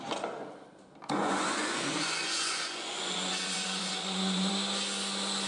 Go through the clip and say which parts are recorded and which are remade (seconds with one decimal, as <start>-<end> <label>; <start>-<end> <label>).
0.0-1.2 recorded; 1.2-4.5 remade; 4.5-5.5 recorded